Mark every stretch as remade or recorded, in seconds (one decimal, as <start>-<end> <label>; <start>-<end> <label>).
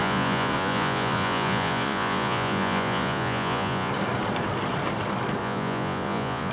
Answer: 0.0-3.9 remade; 3.9-5.4 recorded; 5.4-6.5 remade